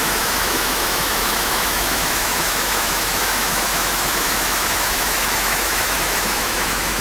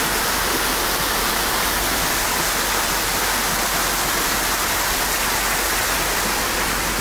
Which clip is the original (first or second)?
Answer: second